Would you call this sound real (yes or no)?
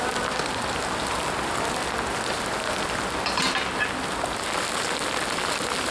yes